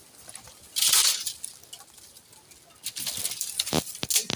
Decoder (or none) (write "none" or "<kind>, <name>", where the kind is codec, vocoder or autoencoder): none